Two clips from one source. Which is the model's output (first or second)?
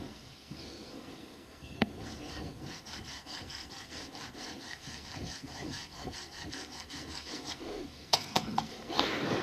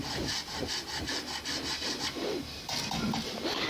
first